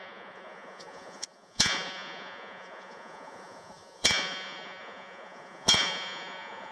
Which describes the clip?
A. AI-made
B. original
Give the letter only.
A